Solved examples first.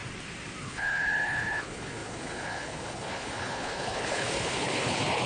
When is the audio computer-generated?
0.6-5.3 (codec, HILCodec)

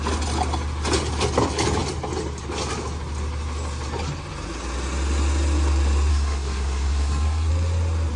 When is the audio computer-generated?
6.1-7.5 (codec, SNAC)

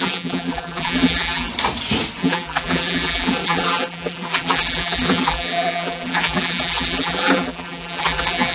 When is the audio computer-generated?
0.0-1.5 (vocoder, BigVGAN v2); 2.2-8.5

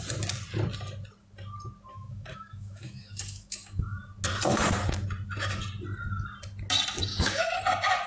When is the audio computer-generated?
1.9-4.0 (autoencoder, DAC-VAE); 7.1-7.6

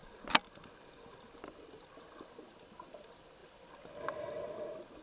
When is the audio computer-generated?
none

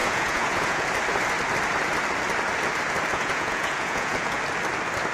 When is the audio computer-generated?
0.0-0.9 (vocoder, Vocos); 3.1-4.4